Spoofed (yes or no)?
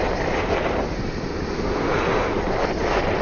no